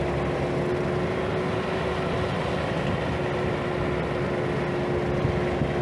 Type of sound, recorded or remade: recorded